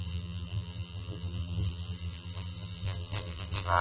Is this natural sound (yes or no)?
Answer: no